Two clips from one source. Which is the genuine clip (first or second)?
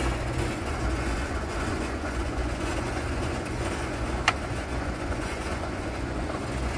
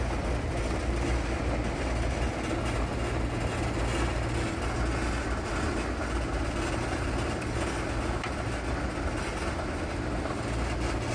second